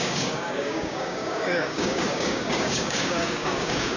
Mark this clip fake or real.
fake